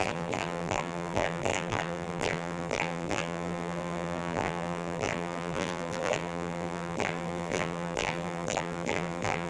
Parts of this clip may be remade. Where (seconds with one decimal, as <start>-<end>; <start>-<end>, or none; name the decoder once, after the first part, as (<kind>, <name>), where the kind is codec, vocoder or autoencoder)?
0.0-9.5 (vocoder, BigVGAN v2)